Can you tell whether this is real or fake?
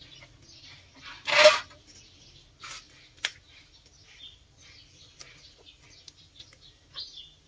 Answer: real